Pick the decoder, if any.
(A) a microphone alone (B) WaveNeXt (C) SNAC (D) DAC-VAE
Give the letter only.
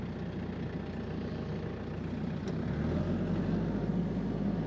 A